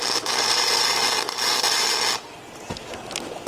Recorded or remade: recorded